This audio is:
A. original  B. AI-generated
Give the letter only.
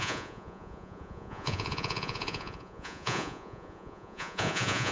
B